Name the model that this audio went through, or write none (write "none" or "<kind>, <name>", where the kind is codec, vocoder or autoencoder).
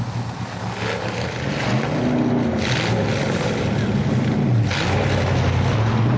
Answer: none